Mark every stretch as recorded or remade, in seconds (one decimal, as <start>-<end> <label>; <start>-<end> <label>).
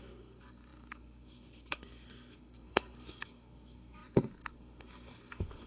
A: 0.0-5.7 remade